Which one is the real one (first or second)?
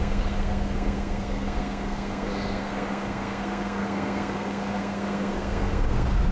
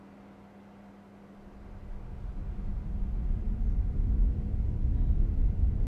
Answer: second